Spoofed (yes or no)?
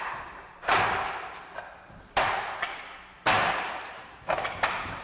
yes